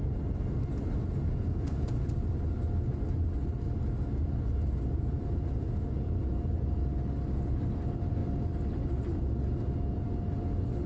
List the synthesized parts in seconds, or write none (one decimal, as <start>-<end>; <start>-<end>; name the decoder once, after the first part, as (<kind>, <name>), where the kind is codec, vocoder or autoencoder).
1.4-2.1 (vocoder, Vocos)